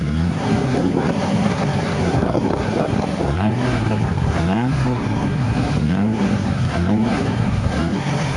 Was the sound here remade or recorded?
remade